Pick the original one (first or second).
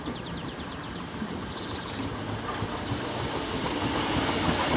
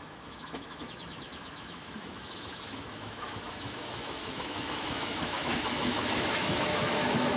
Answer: first